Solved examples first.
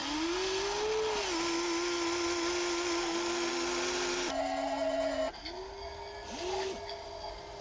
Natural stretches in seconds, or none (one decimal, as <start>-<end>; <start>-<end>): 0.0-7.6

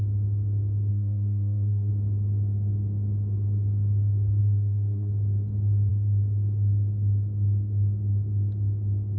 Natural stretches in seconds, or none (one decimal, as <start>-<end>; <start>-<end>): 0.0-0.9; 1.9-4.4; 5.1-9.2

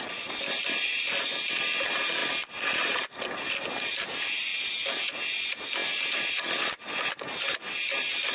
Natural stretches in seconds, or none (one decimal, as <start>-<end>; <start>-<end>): 0.0-8.3